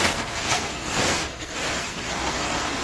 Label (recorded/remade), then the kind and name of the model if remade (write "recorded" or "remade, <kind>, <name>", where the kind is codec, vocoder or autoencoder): remade, codec, SNAC